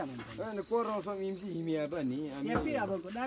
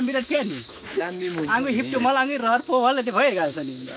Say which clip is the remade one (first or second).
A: second